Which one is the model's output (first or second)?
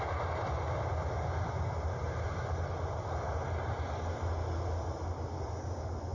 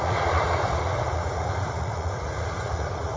second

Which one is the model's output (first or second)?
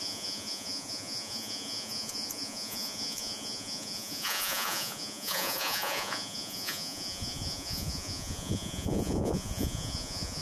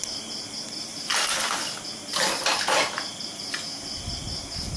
first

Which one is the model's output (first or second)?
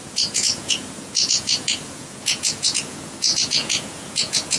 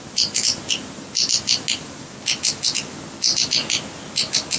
first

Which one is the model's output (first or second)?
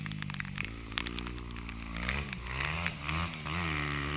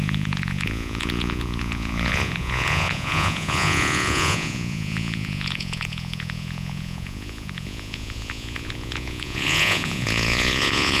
second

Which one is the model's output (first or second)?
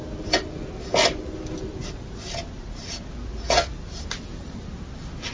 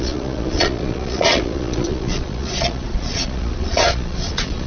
second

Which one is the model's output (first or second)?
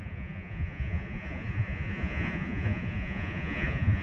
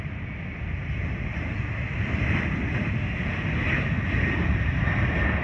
first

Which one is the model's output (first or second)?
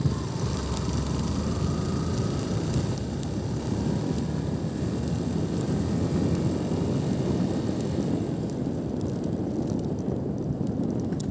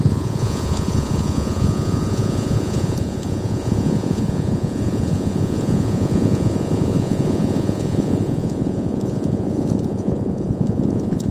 second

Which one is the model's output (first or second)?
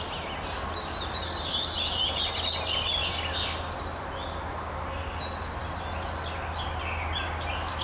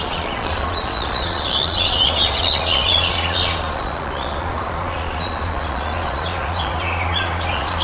second